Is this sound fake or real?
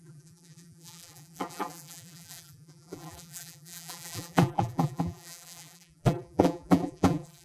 fake